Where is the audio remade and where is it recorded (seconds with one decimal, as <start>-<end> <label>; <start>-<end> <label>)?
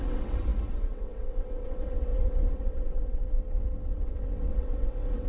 0.0-3.2 remade; 3.2-3.9 recorded; 3.9-5.3 remade